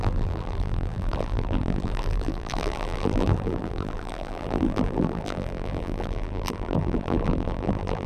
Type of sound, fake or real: fake